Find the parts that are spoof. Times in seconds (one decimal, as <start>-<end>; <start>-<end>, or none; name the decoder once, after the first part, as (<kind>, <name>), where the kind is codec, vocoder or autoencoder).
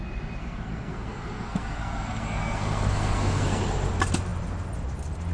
0.4-3.6 (codec, SNAC)